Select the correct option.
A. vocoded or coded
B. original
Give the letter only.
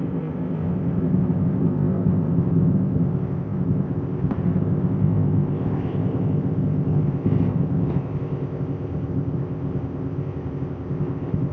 A